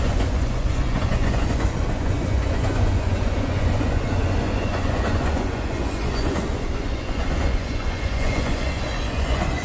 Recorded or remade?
remade